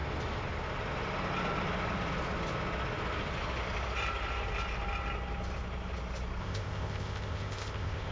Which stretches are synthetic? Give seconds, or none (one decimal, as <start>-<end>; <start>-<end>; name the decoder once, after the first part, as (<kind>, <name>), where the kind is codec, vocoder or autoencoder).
6.4-8.1 (codec, ZipCodec)